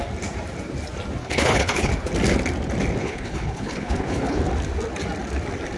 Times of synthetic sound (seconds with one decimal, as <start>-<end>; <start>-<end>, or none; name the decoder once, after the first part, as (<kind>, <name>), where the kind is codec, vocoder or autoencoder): 1.2-1.9 (codec, HILCodec); 3.0-4.4